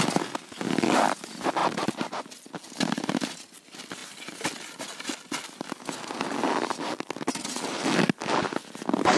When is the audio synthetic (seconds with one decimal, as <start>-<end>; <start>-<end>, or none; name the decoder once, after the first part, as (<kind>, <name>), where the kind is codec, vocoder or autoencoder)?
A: none